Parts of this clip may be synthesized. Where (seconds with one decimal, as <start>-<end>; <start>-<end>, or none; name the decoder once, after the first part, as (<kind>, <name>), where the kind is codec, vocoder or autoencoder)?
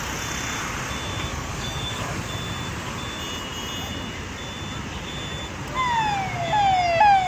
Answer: 1.3-2.2 (codec, DAC)